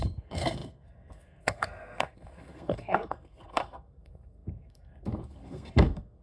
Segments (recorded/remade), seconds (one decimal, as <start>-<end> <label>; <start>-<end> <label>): 0.0-6.2 remade